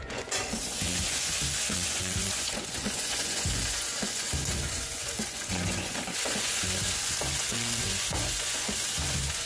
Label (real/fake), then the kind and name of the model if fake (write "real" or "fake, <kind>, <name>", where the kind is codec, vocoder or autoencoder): fake, vocoder, Vocos